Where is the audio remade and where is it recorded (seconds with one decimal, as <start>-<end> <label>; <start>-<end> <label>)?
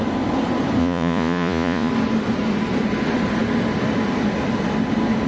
0.0-0.8 recorded; 0.8-1.9 remade; 1.9-5.3 recorded